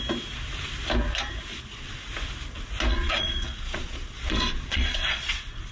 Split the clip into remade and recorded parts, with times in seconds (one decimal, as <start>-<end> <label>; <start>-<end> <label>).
0.0-1.5 recorded; 1.5-2.1 remade; 2.1-2.9 recorded; 2.9-5.7 remade